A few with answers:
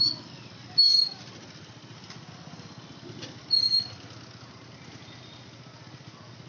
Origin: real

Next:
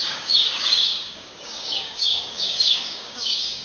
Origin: fake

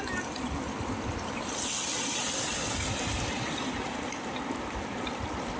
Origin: real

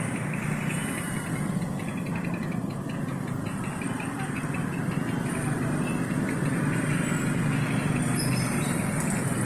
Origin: real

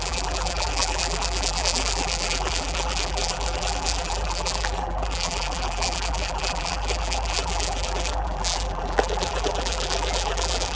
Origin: fake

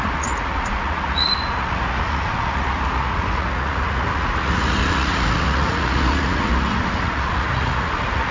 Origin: fake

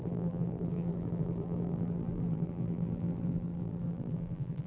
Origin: fake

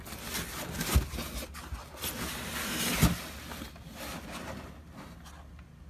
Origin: real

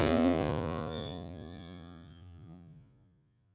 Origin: fake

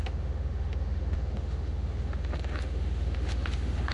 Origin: fake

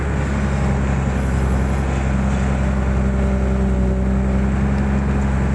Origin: real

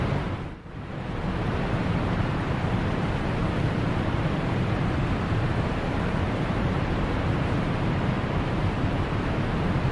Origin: fake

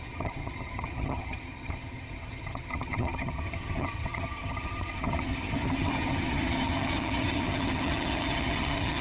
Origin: fake